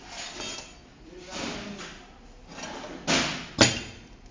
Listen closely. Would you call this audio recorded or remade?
recorded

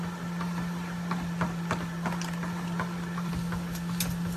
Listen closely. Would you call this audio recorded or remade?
recorded